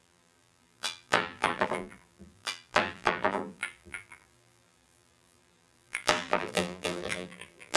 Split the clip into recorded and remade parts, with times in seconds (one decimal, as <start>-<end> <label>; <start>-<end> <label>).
0.0-7.8 remade